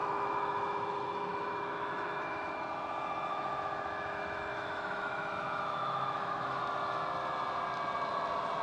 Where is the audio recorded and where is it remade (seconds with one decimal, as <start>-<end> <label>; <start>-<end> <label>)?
0.0-2.6 remade; 2.6-3.3 recorded; 3.3-6.6 remade; 6.6-8.6 recorded